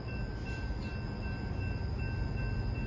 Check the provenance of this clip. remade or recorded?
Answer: recorded